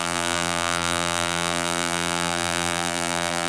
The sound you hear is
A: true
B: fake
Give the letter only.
B